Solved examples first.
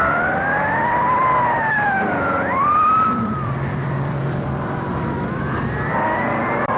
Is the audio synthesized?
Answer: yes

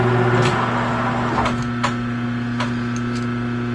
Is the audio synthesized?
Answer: no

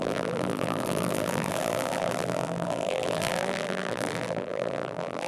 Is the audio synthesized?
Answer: yes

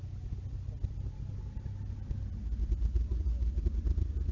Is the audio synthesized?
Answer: no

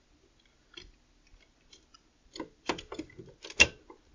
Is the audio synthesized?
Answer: no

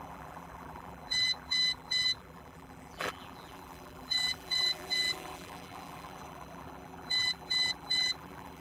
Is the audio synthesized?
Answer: yes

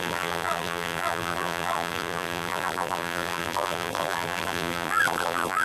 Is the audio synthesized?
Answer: yes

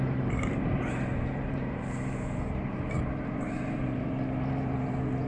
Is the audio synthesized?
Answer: yes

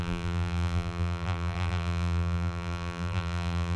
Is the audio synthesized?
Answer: yes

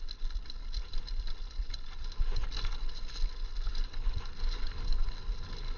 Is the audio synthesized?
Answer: no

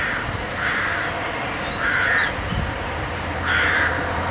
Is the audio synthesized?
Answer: yes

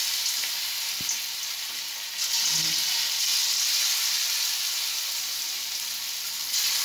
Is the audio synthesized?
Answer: no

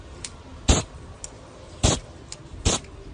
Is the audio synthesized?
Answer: no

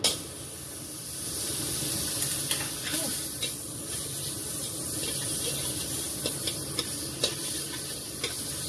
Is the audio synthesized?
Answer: no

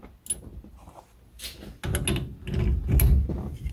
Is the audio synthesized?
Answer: no